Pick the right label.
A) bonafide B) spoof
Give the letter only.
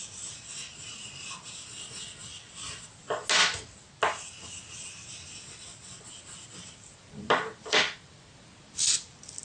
A